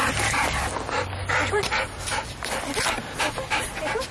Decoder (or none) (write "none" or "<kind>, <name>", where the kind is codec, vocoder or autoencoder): none